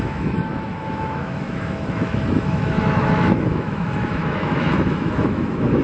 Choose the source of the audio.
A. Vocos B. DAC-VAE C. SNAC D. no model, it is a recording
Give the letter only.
B